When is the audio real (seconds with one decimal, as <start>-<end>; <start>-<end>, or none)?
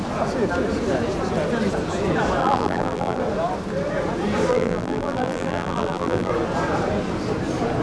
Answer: 0.0-2.4; 3.2-4.5; 6.3-7.8